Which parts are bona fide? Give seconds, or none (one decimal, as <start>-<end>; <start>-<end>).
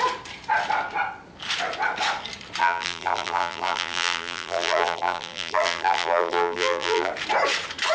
0.0-2.6; 7.1-7.9